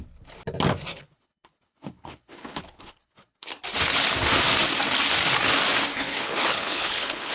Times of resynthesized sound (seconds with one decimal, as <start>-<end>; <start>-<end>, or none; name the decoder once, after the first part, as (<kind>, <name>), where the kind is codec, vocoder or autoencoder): 0.9-3.5 (codec, HILCodec); 5.9-7.3